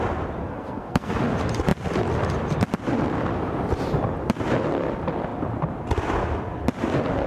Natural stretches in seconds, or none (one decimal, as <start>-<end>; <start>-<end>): 0.0-0.4; 1.2-7.3